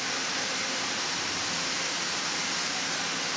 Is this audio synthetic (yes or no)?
yes